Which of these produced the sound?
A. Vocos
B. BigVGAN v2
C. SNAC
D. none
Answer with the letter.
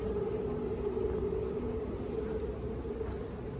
D